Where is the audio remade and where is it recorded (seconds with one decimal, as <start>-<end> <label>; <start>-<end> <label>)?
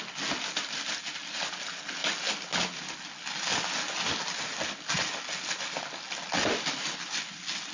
0.0-7.7 recorded